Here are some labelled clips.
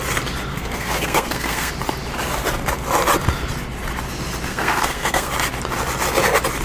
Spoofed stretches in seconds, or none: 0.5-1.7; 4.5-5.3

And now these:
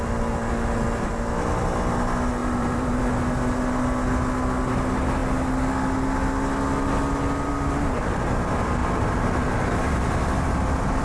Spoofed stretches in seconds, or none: 2.4-3.0; 8.8-10.2

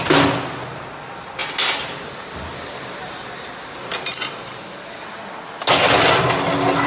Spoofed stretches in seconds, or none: none

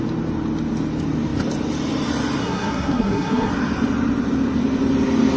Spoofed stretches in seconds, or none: 2.4-3.5

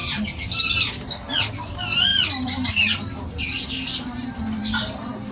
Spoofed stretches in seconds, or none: 0.0-1.5; 2.1-4.4